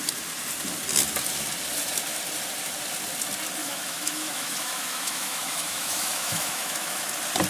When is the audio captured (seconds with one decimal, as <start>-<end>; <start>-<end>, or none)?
0.0-3.6; 7.1-7.5